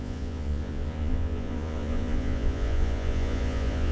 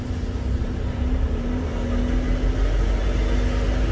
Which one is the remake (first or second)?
first